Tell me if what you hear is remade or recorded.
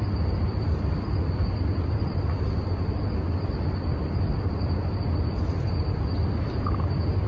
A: remade